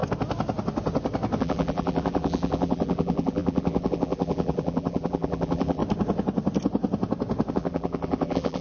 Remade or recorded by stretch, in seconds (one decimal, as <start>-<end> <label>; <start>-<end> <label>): 0.0-1.4 recorded; 1.4-5.8 remade; 5.8-7.5 recorded; 7.5-8.6 remade